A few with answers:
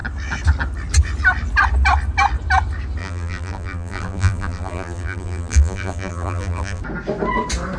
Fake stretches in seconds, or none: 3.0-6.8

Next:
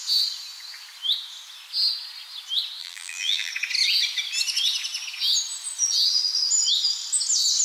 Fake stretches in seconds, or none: 2.8-3.5

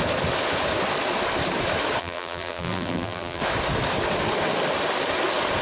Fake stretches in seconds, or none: 2.0-3.4

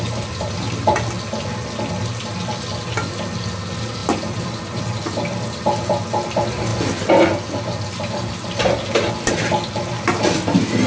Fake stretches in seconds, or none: 4.0-4.8

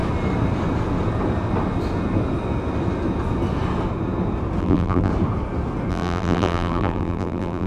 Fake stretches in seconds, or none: 4.6-5.1; 5.9-7.7

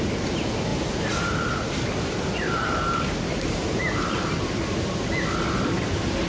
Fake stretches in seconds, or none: 0.7-4.3